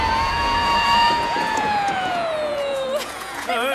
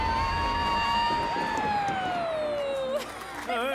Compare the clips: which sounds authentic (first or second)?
second